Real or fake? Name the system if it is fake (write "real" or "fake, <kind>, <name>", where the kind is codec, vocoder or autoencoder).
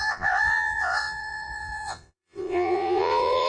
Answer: fake, vocoder, Vocos